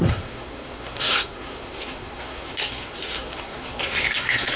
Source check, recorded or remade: remade